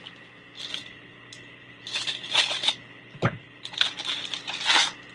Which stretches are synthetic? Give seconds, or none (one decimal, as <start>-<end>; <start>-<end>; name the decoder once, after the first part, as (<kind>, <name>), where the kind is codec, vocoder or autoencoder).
0.8-3.9 (codec, HILCodec)